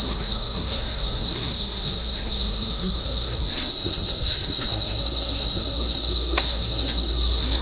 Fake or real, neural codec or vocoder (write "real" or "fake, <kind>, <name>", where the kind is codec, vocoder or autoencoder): fake, codec, SNAC